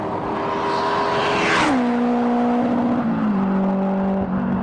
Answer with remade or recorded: recorded